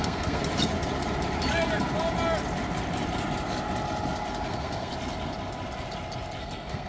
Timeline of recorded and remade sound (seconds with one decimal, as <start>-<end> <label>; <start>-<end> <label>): 0.0-0.4 remade; 0.4-4.5 recorded; 4.5-4.9 remade; 4.9-6.4 recorded; 6.4-6.9 remade